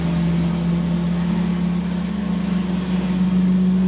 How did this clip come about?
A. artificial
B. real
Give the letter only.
B